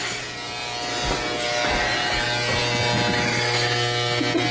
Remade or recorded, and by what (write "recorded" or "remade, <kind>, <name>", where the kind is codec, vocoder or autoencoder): recorded